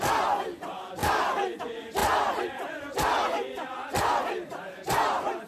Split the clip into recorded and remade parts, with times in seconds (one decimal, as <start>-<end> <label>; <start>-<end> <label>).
0.0-5.5 recorded